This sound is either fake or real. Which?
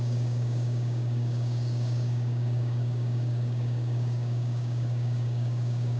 fake